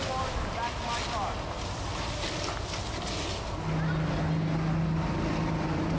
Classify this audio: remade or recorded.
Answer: recorded